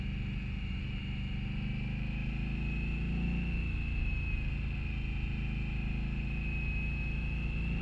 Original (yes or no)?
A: yes